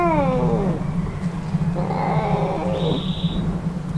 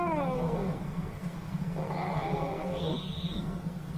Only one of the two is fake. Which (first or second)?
second